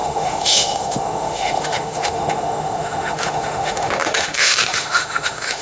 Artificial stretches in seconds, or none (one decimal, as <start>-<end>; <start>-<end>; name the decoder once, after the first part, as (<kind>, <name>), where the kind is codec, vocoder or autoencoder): 0.0-5.6 (autoencoder, DAC-VAE)